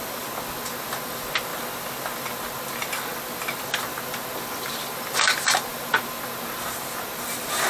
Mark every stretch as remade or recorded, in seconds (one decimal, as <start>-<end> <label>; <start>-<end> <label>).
0.0-7.7 recorded